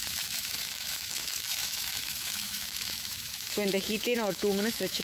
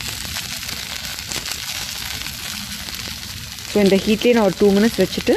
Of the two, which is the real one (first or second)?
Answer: second